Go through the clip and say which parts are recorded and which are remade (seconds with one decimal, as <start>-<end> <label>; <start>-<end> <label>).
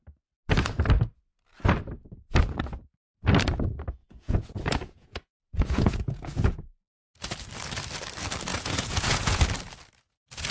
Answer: 0.0-4.0 recorded; 4.0-6.7 remade; 6.7-8.5 recorded; 8.5-9.4 remade; 9.4-10.5 recorded